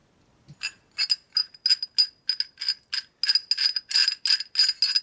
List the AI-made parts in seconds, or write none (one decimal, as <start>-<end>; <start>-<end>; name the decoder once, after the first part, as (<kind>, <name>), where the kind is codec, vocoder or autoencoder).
none